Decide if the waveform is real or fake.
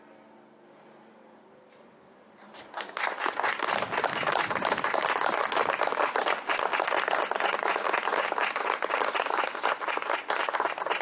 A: real